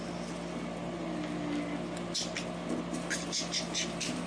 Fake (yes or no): no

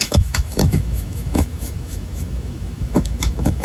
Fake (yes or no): yes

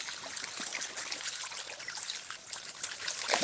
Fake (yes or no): no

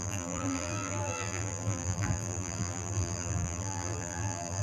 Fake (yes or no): yes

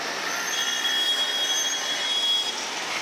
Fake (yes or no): no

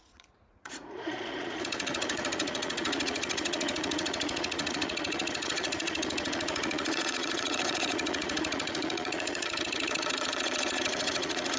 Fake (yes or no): yes